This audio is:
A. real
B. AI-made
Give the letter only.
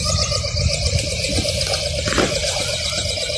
A